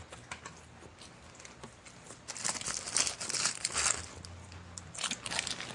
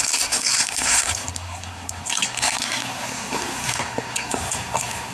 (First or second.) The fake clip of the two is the second